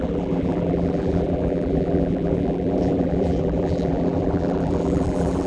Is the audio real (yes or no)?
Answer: no